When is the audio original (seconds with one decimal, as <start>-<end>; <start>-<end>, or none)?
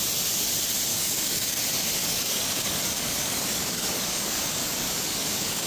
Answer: 0.0-0.9; 1.6-2.0